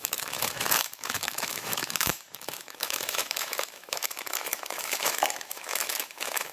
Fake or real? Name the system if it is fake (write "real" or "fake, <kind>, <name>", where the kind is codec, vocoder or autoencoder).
fake, autoencoder, DAC-VAE